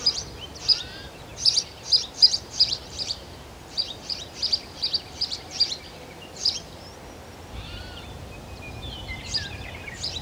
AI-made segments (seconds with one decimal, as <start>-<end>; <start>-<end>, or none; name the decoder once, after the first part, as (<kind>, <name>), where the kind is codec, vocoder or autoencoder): 0.0-1.3 (vocoder, BigVGAN v2); 2.2-6.9; 7.8-10.2